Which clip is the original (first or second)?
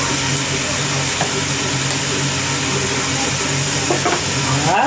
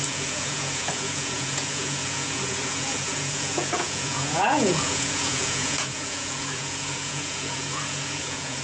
first